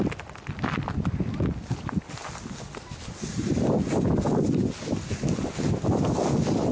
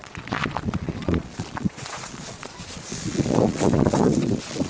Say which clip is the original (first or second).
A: first